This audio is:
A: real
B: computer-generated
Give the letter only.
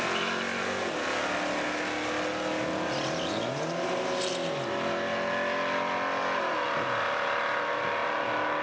A